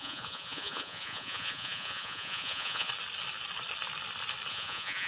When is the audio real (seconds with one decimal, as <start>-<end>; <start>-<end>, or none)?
2.9-4.5

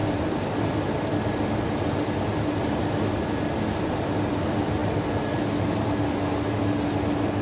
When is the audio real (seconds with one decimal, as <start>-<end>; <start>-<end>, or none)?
0.6-7.4

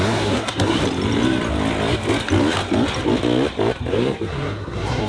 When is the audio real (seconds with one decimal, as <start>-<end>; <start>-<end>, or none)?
0.8-3.9

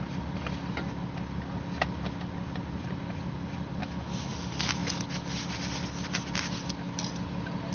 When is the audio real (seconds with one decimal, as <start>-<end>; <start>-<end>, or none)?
0.0-3.8; 4.3-7.7

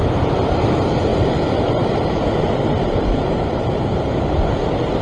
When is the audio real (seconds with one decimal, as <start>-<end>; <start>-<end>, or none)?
0.0-1.1; 4.1-5.0

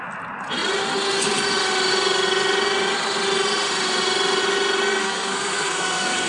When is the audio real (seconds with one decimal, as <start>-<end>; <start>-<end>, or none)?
0.0-5.0

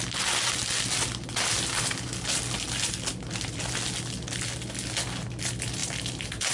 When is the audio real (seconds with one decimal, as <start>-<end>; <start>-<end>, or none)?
0.0-6.5

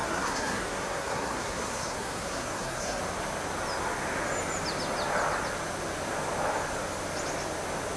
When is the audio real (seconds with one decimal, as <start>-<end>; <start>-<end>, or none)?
3.0-8.0